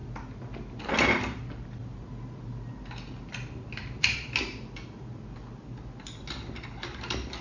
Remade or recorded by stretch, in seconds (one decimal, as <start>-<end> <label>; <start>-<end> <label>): 0.0-7.4 recorded